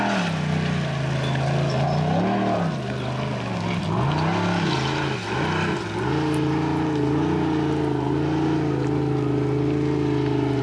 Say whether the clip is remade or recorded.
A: recorded